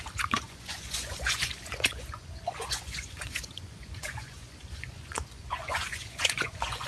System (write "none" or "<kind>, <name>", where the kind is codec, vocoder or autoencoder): vocoder, Vocos